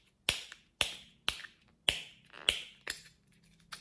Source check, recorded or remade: recorded